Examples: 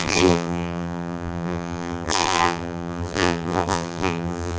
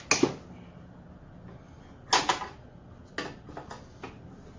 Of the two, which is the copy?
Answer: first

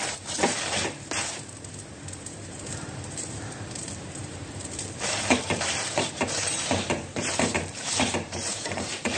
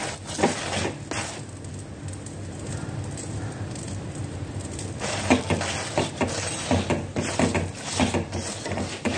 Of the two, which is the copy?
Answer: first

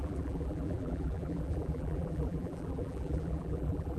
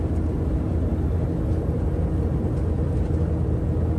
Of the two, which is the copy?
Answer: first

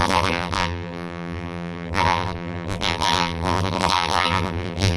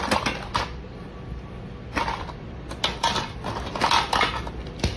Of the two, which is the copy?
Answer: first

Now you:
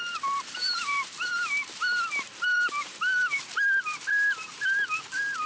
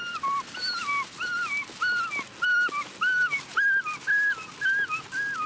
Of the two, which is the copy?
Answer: first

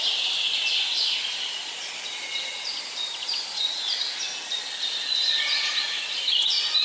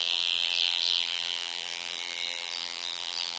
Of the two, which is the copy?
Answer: second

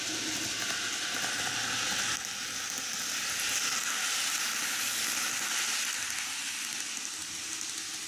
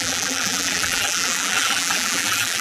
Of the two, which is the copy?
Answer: second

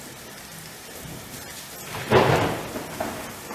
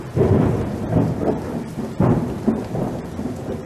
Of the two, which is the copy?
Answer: second